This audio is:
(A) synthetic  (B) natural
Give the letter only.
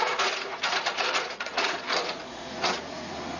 A